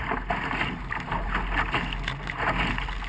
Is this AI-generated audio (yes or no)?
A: no